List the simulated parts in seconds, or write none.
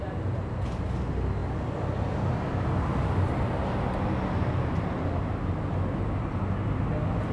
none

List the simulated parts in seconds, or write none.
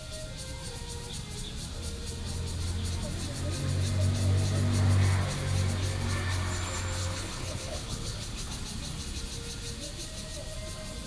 7.0-8.5 (codec, HILCodec)